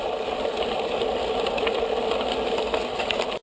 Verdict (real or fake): real